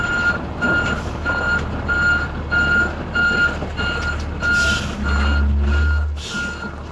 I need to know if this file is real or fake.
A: real